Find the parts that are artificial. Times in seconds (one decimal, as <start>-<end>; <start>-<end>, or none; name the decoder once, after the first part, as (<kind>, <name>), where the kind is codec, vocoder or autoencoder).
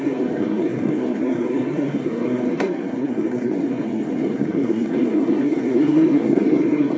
0.0-7.0 (codec, SNAC)